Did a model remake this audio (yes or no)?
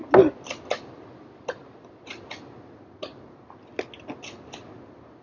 no